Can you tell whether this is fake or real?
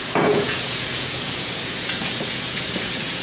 fake